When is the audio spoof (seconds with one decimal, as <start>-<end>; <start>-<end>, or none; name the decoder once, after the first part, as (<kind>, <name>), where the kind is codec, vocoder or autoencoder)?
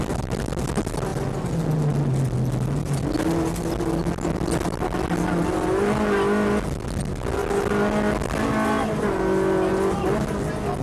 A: none